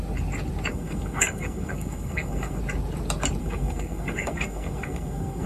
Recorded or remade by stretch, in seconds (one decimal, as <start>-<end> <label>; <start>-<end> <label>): 0.0-0.7 recorded; 0.7-2.6 remade; 2.6-3.4 recorded; 3.4-5.5 remade